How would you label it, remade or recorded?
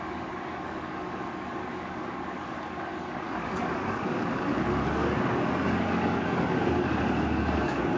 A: remade